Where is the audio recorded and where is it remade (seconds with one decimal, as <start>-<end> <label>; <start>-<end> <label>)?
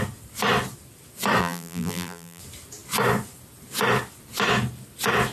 0.0-1.4 recorded; 1.4-2.4 remade; 2.4-5.3 recorded